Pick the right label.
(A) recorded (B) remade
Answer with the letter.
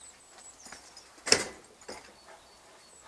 A